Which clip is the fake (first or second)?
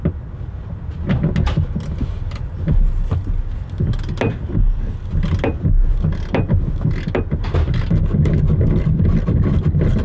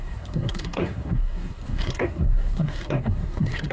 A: second